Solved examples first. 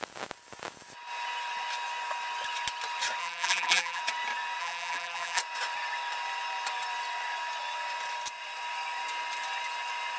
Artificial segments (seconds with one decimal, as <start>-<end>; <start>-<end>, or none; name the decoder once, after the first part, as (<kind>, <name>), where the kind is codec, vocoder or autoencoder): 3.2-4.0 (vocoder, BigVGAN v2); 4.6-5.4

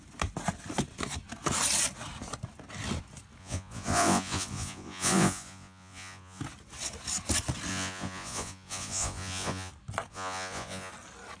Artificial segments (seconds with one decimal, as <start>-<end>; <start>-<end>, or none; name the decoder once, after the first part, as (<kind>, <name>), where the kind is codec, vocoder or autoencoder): 3.4-6.4 (vocoder, Vocos); 7.7-9.7; 10.1-10.9

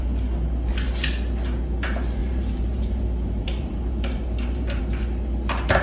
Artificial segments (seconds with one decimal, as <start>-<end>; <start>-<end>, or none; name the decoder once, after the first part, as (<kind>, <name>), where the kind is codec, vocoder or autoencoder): 2.2-4.8 (vocoder, BigVGAN v2)